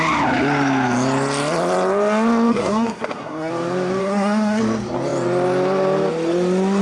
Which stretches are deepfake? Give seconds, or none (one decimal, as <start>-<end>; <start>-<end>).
2.5-3.5; 4.0-4.6